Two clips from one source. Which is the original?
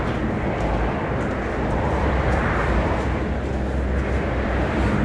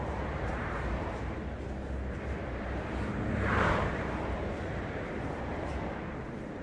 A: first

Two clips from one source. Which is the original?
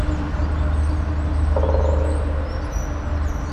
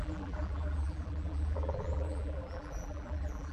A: first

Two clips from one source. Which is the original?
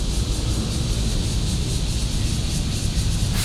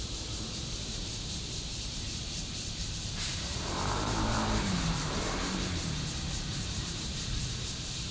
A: first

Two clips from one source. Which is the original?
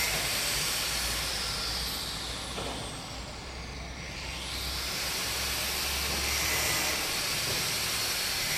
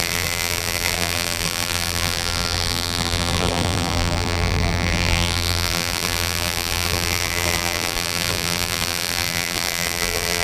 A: first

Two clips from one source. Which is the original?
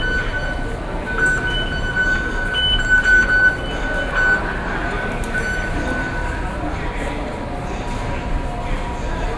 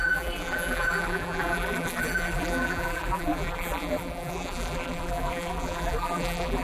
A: first